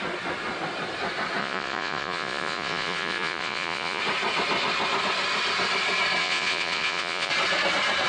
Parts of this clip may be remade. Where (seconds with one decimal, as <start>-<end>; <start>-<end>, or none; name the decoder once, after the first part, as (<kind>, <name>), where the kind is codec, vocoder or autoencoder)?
1.4-4.0 (vocoder, Vocos); 6.2-7.3